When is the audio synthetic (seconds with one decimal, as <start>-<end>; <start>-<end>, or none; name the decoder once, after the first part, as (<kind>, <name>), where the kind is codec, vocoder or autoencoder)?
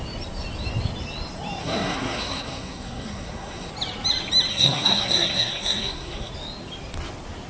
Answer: 1.6-3.7 (codec, SNAC); 4.5-6.3